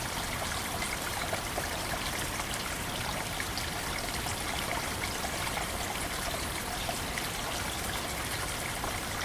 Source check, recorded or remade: recorded